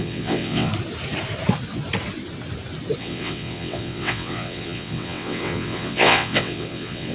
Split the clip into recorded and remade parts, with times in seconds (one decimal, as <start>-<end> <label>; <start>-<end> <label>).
0.0-0.7 remade; 0.7-3.0 recorded; 3.0-7.1 remade